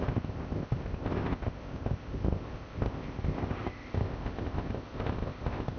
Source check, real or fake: fake